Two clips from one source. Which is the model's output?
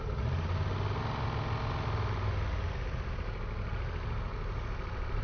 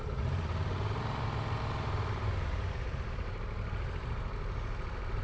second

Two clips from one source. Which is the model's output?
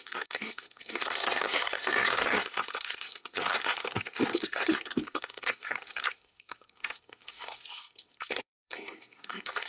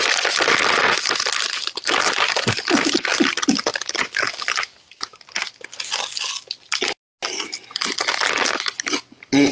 first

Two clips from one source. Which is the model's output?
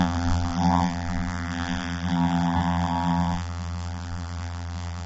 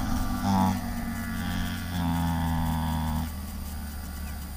first